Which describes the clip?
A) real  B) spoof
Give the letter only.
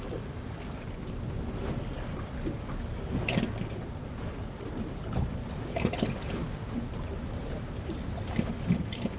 A